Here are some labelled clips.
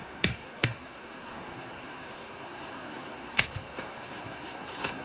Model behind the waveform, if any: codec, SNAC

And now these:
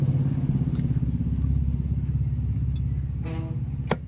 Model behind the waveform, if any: none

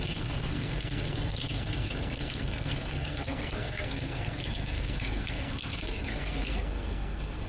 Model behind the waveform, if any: codec, SNAC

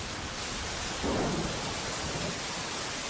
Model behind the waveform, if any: none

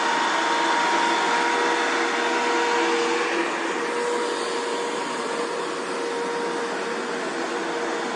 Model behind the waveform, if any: none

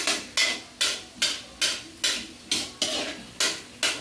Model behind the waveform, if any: none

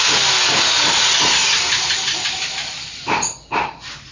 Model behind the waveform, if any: none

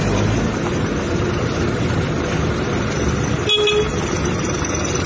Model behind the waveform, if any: none